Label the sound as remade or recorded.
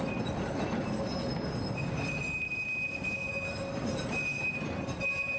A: recorded